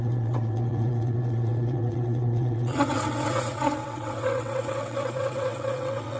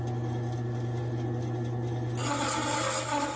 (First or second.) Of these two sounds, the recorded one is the second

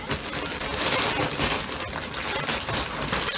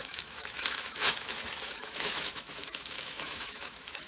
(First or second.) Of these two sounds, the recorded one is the first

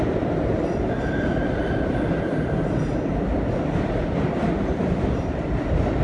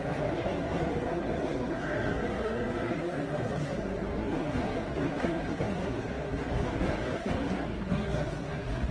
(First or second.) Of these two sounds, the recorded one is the first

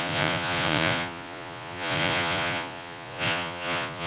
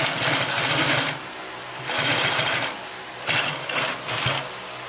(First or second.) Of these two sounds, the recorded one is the second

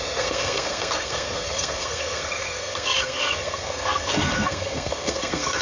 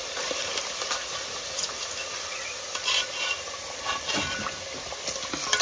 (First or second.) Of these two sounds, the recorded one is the second